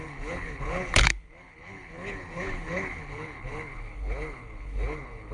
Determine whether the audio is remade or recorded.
remade